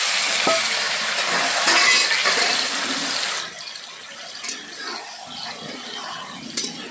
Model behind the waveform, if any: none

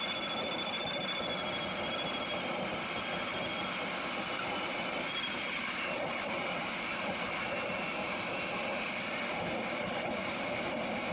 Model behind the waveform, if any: none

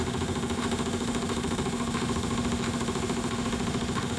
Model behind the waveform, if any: autoencoder, DAC-VAE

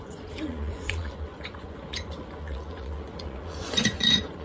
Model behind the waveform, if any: vocoder, Vocos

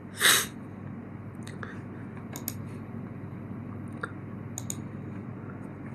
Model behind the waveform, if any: none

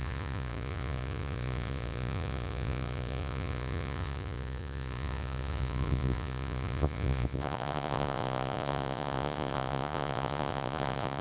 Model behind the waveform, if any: vocoder, Vocos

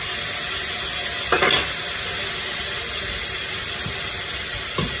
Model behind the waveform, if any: none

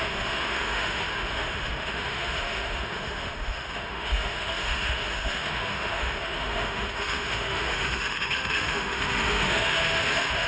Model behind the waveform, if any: autoencoder, DAC-VAE